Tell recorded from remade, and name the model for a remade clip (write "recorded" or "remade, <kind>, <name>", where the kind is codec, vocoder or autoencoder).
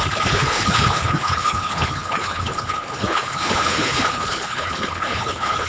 remade, codec, HILCodec